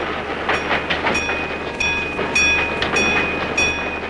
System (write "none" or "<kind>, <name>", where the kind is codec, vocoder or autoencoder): none